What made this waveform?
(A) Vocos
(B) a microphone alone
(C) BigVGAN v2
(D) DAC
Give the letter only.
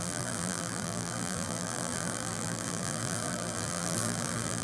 C